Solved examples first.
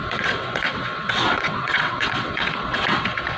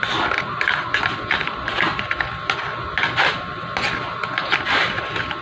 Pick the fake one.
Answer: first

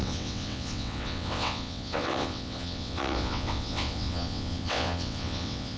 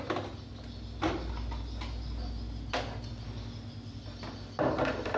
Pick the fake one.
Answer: first